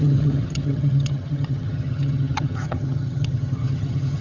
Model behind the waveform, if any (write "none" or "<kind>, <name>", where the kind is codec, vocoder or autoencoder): vocoder, HiFi-GAN